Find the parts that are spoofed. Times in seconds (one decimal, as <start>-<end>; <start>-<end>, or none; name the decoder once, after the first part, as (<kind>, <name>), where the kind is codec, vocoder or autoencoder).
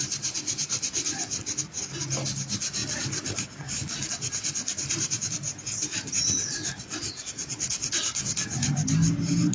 none